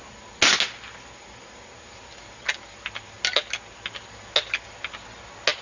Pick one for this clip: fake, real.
real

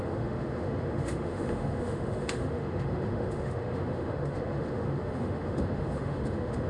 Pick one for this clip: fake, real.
fake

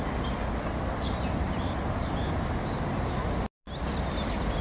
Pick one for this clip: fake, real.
real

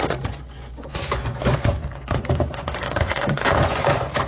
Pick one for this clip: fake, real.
fake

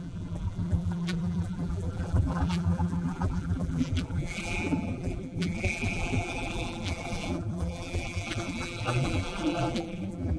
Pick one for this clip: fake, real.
fake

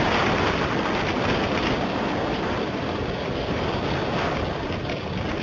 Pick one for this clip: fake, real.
real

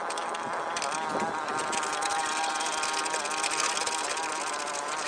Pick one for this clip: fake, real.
real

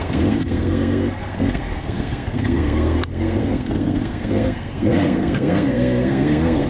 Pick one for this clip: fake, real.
fake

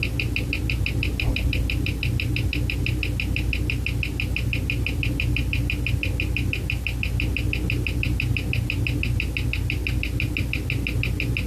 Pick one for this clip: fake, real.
real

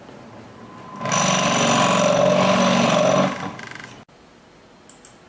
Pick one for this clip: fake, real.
real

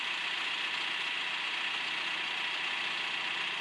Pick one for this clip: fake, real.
real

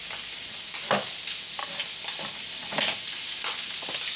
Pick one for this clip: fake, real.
real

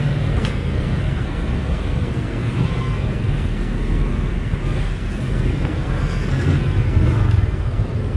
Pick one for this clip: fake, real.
fake